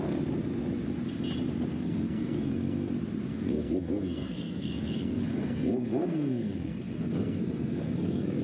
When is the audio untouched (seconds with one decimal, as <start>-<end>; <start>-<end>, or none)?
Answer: 0.0-1.7; 2.9-3.3